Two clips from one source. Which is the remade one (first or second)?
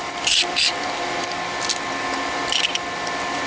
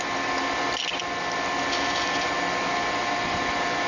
first